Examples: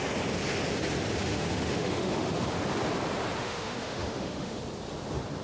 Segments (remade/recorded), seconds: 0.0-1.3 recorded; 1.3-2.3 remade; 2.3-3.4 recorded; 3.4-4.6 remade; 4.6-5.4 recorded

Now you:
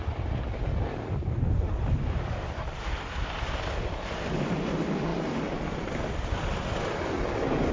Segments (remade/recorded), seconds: 0.0-7.7 recorded

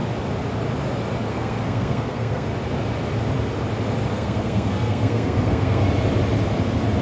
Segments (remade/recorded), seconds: 0.0-1.3 recorded; 1.3-2.5 remade; 2.5-4.1 recorded; 4.1-5.8 remade; 5.8-7.0 recorded

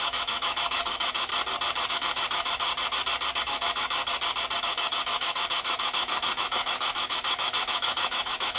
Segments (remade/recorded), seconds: 0.0-1.3 remade; 1.3-1.9 recorded; 1.9-2.7 remade; 2.7-3.4 recorded; 3.4-4.0 remade; 4.0-4.6 recorded; 4.6-8.6 remade

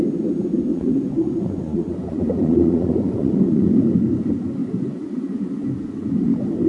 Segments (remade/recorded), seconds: 0.0-0.7 recorded; 0.7-3.7 remade; 3.7-4.6 recorded; 4.6-5.7 remade; 5.7-6.7 recorded

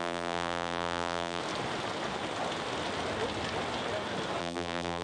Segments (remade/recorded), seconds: 0.0-1.4 remade; 1.4-4.4 recorded; 4.4-5.0 remade

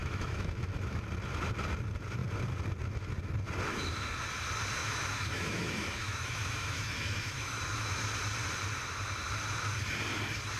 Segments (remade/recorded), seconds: 0.0-1.0 remade; 1.0-4.8 recorded; 4.8-8.1 remade; 8.1-10.6 recorded